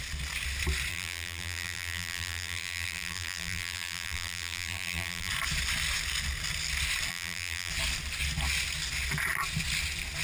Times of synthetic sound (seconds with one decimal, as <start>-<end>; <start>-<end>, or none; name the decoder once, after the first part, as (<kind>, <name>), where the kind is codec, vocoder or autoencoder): 0.9-5.3 (vocoder, BigVGAN v2); 7.1-7.7